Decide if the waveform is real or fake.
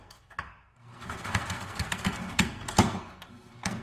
fake